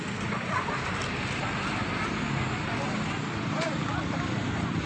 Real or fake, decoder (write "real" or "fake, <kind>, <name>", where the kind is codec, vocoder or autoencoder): real